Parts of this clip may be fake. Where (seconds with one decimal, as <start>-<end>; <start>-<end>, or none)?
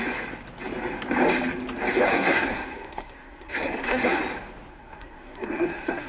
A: 2.1-4.2; 4.7-6.1